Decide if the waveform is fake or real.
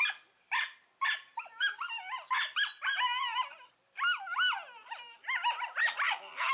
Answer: real